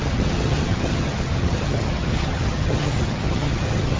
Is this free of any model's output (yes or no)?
no